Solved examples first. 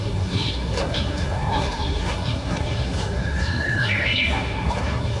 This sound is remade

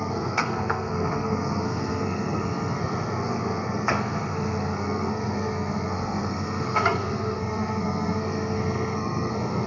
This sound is remade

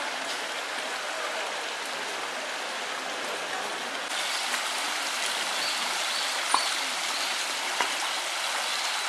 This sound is recorded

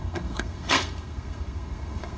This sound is remade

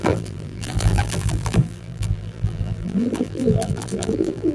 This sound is remade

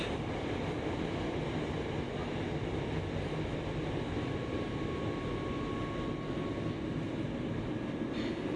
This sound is recorded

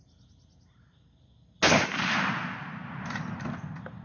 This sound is recorded